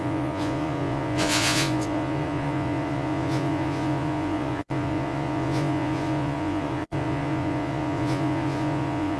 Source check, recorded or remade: remade